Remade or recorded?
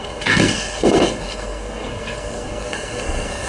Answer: remade